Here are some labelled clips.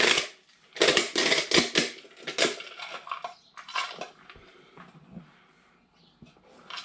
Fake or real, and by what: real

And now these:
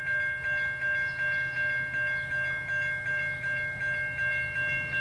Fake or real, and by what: real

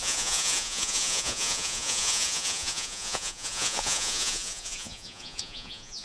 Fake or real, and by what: fake, vocoder, Vocos